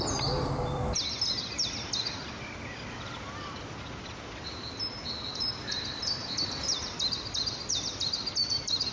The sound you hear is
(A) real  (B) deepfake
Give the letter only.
B